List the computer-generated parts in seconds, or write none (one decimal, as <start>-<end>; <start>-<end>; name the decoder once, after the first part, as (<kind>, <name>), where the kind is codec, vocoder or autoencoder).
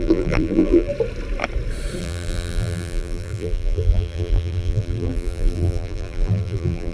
0.0-0.9 (vocoder, BigVGAN v2); 2.0-6.9